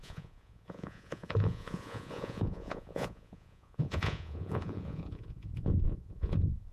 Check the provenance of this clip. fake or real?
fake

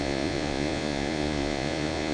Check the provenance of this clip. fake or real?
fake